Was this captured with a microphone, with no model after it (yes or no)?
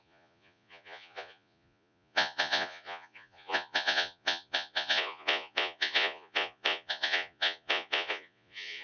no